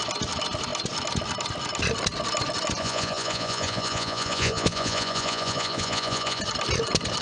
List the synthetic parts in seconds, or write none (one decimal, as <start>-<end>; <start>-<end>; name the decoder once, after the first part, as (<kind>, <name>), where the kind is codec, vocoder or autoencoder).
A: 2.8-6.4 (vocoder, Vocos)